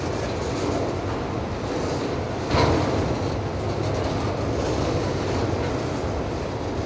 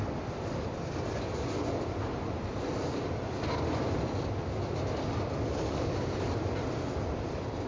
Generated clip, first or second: second